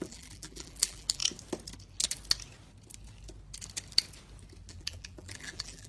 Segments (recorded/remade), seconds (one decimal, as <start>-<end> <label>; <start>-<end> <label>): 0.0-1.2 remade; 1.2-4.7 recorded; 4.7-5.9 remade